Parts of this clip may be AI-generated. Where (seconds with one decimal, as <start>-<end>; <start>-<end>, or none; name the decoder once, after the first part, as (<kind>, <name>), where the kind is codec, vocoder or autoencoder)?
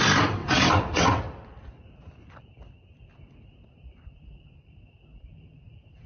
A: 0.4-1.2 (vocoder, WaveNeXt)